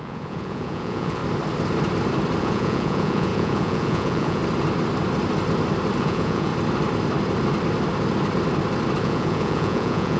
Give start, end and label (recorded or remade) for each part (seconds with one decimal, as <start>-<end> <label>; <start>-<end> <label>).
0.0-1.2 remade; 1.2-2.4 recorded; 2.4-4.4 remade; 4.4-6.0 recorded; 6.0-6.5 remade; 6.5-9.0 recorded; 9.0-10.2 remade